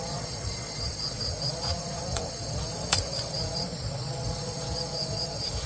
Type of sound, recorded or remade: remade